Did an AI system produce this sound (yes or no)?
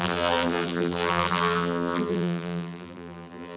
yes